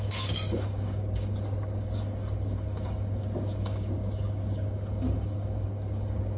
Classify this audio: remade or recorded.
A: remade